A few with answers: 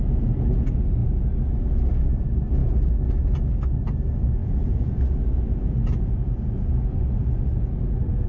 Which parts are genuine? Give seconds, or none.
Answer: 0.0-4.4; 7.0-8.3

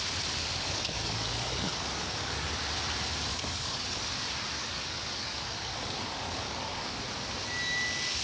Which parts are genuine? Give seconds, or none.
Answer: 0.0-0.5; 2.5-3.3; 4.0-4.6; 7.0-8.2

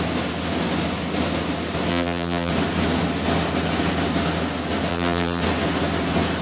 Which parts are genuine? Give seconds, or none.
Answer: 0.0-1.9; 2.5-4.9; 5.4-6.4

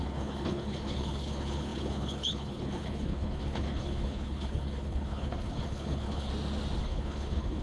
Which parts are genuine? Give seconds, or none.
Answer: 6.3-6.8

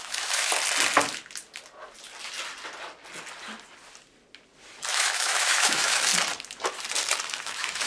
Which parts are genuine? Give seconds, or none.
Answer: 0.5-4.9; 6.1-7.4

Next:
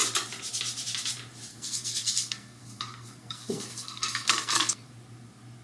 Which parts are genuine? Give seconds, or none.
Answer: 0.0-1.5; 4.9-5.6

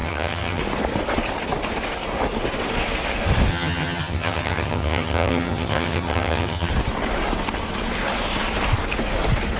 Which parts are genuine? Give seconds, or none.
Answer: 0.6-3.5; 6.7-9.6

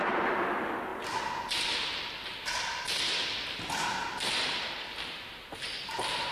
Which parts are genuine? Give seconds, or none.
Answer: 0.0-6.3